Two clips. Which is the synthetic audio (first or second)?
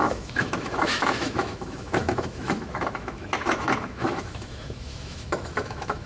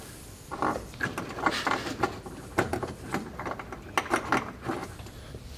first